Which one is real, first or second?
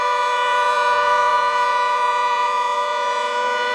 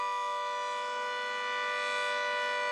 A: second